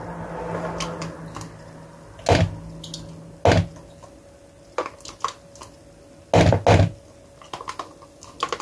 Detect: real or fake real